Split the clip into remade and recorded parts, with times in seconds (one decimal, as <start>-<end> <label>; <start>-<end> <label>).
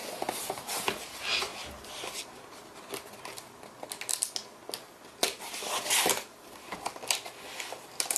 0.0-0.5 remade; 0.5-8.2 recorded